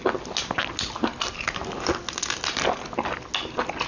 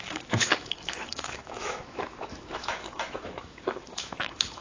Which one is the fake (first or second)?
second